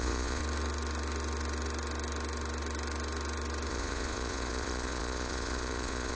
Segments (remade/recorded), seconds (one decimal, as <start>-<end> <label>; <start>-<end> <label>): 0.0-0.4 remade; 0.4-3.7 recorded; 3.7-6.1 remade